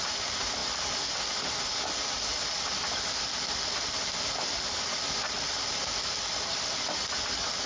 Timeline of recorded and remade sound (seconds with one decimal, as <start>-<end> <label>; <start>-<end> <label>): 0.0-7.7 recorded